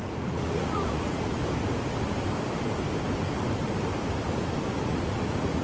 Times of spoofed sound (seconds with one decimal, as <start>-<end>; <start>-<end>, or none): 0.0-1.4; 4.8-5.6

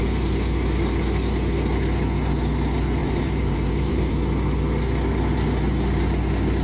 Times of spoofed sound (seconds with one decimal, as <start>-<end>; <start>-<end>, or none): 3.0-4.1